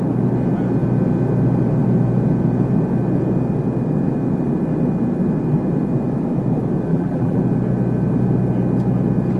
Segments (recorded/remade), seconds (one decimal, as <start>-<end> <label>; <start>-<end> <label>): 0.0-6.9 recorded; 6.9-7.4 remade; 7.4-9.4 recorded